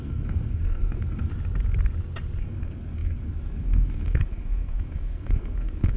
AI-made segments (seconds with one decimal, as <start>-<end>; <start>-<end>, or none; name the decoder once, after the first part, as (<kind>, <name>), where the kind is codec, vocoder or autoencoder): 0.0-1.3 (codec, SNAC); 2.4-6.0